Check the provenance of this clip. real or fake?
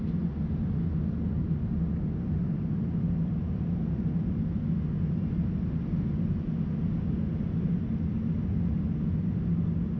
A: real